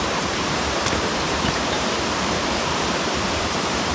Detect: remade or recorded remade